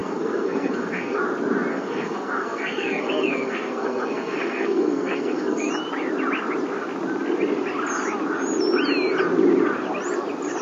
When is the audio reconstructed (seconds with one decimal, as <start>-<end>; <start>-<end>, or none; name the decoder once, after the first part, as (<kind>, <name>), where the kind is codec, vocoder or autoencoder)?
0.0-1.2 (codec, SNAC); 1.7-5.7